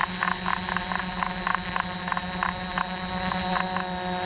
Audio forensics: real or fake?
real